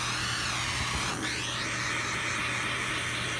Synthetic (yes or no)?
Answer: no